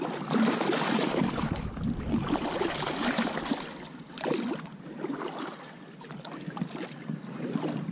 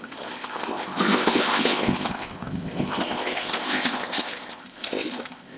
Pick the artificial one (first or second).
second